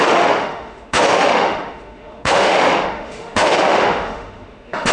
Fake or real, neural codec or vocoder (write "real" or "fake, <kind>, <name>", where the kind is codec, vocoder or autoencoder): fake, autoencoder, DAC-VAE